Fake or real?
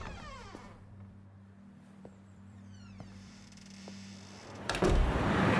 fake